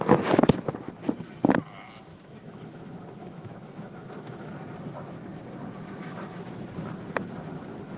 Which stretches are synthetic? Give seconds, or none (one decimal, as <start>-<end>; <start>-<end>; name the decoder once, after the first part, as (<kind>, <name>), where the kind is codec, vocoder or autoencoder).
2.1-4.5 (autoencoder, DAC-VAE); 6.0-6.5